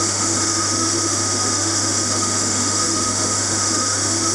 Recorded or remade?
remade